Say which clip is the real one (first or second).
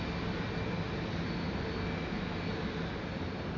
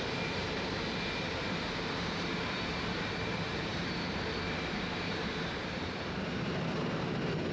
first